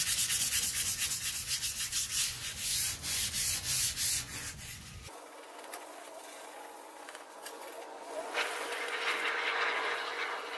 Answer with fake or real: fake